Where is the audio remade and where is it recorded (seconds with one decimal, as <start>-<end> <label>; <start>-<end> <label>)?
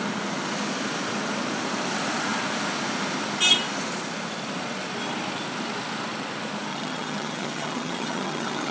0.0-6.7 recorded; 6.7-8.7 remade